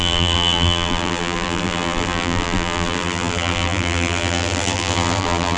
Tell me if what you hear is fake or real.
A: fake